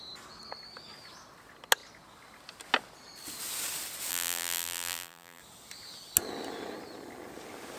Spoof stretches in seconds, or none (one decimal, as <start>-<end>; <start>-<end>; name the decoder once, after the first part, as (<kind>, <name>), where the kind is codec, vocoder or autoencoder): 4.1-5.4 (vocoder, BigVGAN v2)